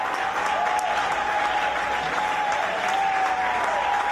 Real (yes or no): yes